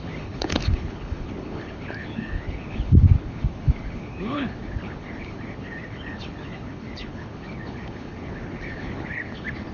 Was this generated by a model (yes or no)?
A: yes